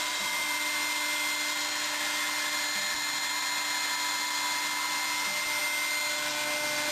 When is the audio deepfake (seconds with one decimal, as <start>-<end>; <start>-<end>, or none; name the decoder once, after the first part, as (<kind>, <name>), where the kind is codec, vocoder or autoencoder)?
none